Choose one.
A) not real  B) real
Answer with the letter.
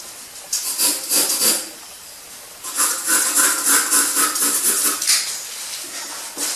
B